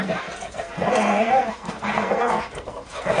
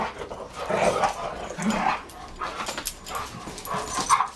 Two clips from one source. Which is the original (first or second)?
second